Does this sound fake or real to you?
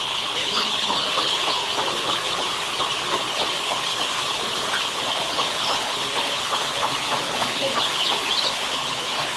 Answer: fake